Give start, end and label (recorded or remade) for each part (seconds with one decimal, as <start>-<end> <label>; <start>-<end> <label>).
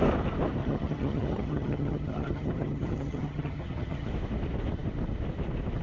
0.0-0.6 recorded; 0.6-4.1 remade; 4.1-5.8 recorded